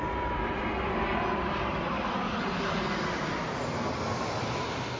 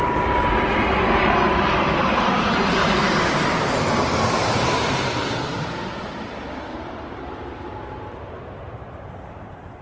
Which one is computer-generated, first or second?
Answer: second